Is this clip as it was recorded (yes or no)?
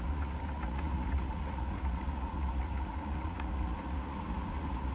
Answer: no